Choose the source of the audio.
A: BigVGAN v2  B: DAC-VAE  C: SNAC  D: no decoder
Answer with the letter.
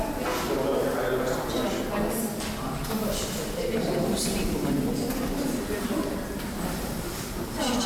D